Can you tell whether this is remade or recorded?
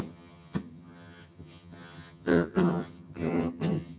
remade